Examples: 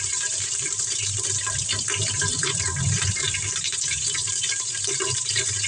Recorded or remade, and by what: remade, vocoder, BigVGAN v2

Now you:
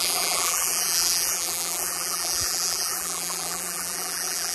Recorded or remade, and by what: remade, vocoder, BigVGAN v2